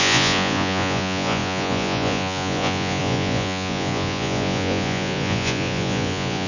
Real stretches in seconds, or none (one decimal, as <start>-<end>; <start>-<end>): none